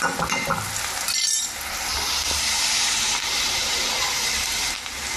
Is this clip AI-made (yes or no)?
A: no